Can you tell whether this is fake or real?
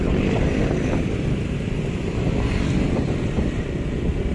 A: real